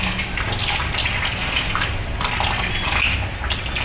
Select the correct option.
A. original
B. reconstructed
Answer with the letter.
A